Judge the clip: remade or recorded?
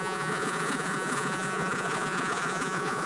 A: remade